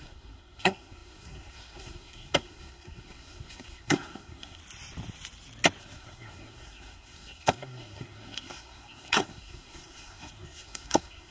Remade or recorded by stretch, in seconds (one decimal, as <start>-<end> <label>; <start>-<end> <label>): 0.0-4.6 remade; 4.6-5.8 recorded; 5.8-11.3 remade